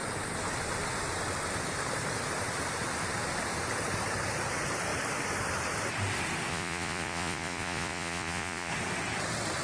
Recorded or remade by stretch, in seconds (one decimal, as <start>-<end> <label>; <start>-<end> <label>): 0.0-6.5 recorded; 6.5-8.7 remade; 8.7-9.6 recorded